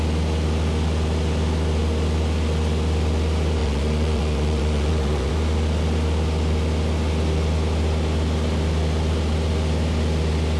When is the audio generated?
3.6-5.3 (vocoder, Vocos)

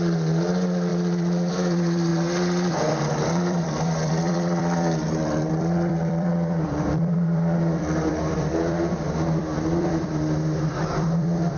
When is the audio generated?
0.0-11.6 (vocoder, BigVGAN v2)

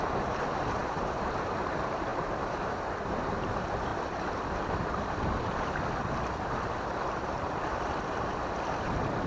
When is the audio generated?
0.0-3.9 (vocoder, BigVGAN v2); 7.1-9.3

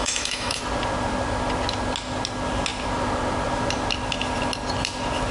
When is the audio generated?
0.0-0.6 (autoencoder, DAC-VAE)

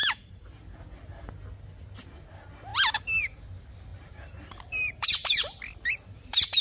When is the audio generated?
0.0-0.8 (vocoder, BigVGAN v2); 2.7-3.2; 3.9-6.6

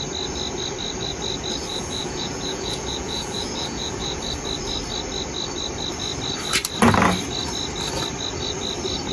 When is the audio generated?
1.7-4.2 (vocoder, Vocos)